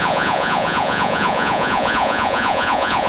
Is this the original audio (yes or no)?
no